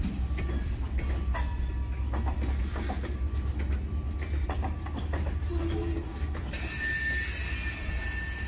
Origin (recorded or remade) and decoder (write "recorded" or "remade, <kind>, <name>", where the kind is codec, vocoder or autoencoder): recorded